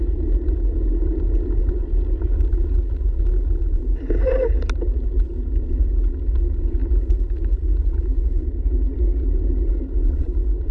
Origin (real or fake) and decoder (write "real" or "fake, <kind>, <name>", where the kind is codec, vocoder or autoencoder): real